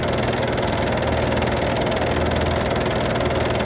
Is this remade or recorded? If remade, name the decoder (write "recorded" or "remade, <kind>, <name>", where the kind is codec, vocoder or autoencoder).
recorded